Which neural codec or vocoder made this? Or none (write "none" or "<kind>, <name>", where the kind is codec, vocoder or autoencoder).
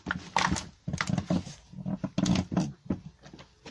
none